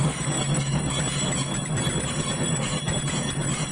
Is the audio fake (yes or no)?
no